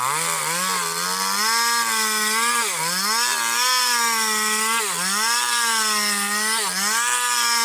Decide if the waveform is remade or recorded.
recorded